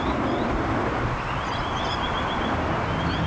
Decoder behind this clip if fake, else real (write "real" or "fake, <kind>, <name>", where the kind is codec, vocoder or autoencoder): real